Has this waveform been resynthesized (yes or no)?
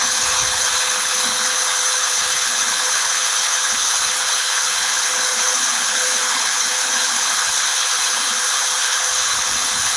yes